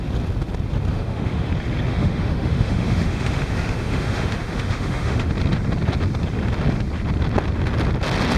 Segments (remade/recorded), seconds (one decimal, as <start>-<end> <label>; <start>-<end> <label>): 0.0-0.9 recorded; 0.9-1.5 remade; 1.5-1.9 recorded; 1.9-5.3 remade; 5.3-8.4 recorded